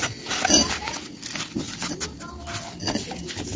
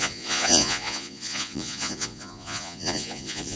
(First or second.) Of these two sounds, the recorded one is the first